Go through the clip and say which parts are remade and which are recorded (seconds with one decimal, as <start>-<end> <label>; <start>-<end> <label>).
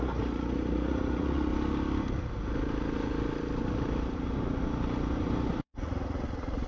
0.0-1.5 remade; 1.5-5.5 recorded; 5.5-6.7 remade